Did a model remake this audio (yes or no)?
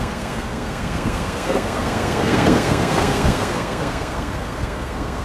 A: yes